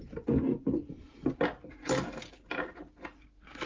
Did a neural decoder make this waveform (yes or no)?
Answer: no